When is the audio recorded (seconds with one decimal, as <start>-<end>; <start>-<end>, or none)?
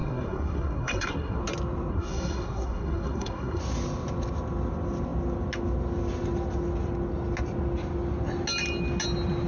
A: 1.4-1.9; 3.6-9.5